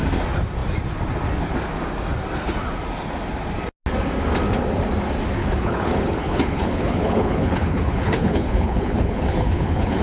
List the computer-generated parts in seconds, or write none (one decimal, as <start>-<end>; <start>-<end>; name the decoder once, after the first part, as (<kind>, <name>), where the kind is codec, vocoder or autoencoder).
5.4-10.0 (codec, HILCodec)